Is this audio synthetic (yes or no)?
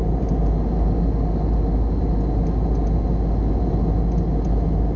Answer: no